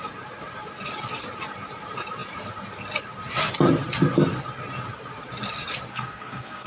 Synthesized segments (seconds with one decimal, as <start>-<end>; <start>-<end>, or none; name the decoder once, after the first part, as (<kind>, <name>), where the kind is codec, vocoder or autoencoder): 5.9-6.7 (codec, SNAC)

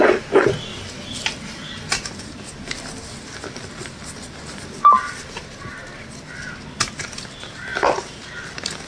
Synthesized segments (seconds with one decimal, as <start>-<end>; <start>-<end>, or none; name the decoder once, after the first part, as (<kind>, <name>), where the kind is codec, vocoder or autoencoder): 0.7-5.7 (vocoder, BigVGAN v2); 7.7-8.2

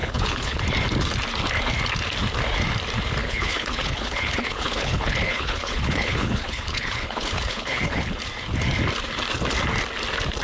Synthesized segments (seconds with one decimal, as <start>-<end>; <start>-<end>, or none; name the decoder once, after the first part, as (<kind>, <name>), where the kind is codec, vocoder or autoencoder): 0.0-0.6 (codec, HILCodec); 3.2-8.2

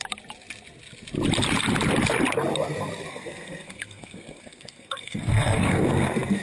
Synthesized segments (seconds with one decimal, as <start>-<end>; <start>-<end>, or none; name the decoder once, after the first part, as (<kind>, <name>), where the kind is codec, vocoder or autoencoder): 3.1-6.4 (codec, SNAC)

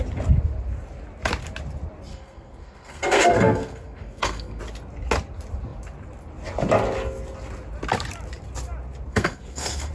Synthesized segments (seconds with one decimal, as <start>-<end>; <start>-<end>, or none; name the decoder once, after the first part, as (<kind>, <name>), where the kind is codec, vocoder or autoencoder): 2.1-4.6 (codec, SNAC); 9.1-9.9

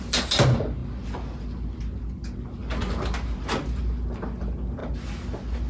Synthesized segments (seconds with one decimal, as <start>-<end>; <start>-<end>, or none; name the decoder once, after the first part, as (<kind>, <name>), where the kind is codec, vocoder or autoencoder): none

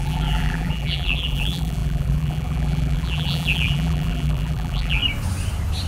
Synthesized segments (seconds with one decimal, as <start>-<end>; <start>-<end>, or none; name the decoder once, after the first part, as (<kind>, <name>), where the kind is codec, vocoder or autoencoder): 0.0-5.0 (vocoder, BigVGAN v2)